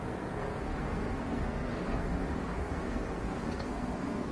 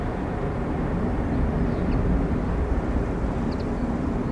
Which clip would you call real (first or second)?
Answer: second